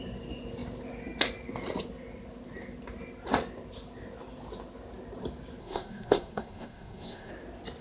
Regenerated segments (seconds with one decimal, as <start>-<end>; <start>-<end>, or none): 5.6-7.3